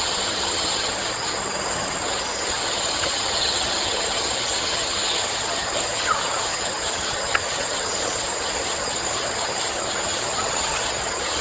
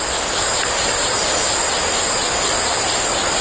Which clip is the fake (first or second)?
first